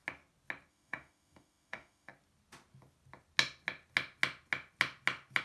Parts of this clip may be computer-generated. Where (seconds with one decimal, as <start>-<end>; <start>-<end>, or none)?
0.7-2.1